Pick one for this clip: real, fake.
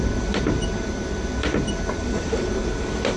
real